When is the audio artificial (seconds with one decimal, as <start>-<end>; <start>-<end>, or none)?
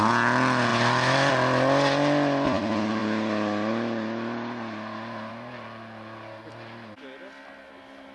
none